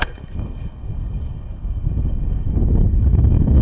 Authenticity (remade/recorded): remade